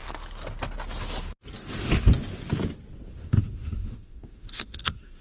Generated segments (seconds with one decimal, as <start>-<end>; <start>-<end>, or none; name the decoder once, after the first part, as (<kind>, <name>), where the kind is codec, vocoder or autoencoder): 3.1-5.2 (autoencoder, DAC-VAE)